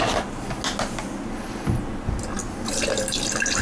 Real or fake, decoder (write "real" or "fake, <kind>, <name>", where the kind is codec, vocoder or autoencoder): real